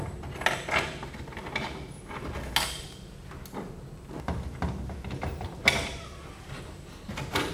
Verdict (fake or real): real